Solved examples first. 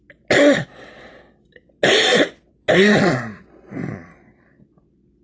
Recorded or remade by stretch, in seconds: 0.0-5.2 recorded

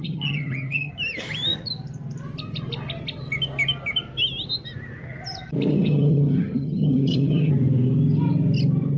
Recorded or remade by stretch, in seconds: 0.0-0.9 remade; 0.9-5.7 recorded; 5.7-7.5 remade; 7.5-9.0 recorded

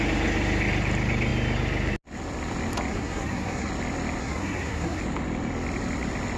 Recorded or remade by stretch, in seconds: 0.0-2.9 recorded; 2.9-3.7 remade; 3.7-4.2 recorded; 4.2-5.0 remade; 5.0-6.4 recorded

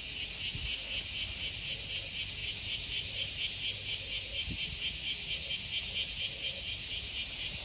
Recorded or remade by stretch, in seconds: 0.0-7.6 recorded

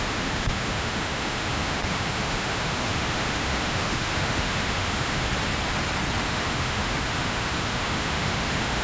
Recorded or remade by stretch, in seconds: 0.0-5.3 remade; 5.3-6.2 recorded; 6.2-8.8 remade

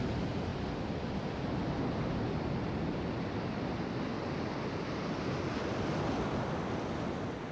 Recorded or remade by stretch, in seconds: 0.0-7.5 recorded